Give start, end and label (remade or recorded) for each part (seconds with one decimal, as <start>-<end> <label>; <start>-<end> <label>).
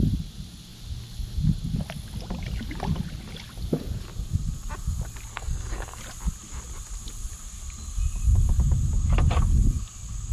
0.0-5.3 recorded; 5.3-6.0 remade; 6.0-10.3 recorded